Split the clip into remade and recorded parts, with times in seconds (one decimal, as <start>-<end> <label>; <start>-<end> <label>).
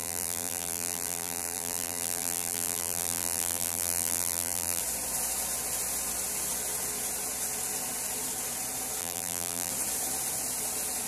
0.0-4.8 remade; 4.8-9.0 recorded; 9.0-9.7 remade; 9.7-11.1 recorded